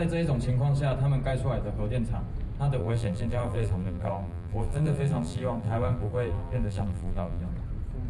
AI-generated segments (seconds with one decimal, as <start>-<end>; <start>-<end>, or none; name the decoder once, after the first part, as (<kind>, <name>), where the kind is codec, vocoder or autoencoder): 2.8-7.4 (vocoder, BigVGAN v2)